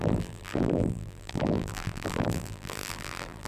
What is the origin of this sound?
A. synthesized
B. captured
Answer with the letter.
A